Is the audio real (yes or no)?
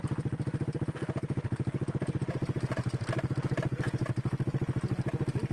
yes